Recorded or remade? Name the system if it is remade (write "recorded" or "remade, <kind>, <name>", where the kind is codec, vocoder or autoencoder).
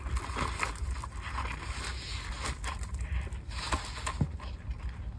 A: recorded